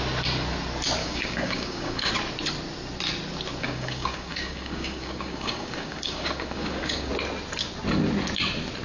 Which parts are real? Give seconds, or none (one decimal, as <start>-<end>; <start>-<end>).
0.0-1.0; 2.1-3.6; 7.1-8.8